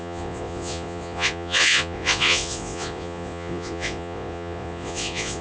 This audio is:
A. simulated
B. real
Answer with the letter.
A